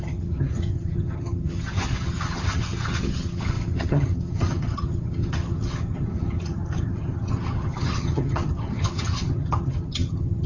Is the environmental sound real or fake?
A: fake